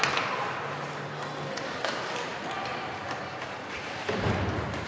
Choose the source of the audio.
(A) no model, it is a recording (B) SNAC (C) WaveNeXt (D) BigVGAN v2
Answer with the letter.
A